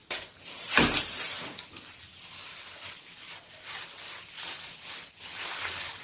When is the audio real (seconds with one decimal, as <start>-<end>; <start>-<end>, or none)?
1.7-2.1; 3.9-6.0